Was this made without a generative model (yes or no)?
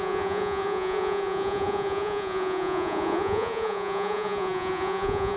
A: no